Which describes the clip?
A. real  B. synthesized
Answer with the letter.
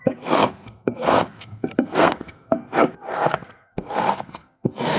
B